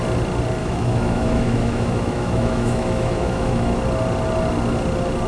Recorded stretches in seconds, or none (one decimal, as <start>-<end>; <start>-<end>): 0.0-0.6; 3.8-5.3